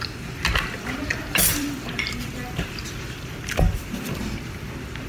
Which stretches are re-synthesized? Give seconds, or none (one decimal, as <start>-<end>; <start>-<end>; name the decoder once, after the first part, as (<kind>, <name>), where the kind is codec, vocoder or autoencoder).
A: 1.1-4.2 (vocoder, BigVGAN v2)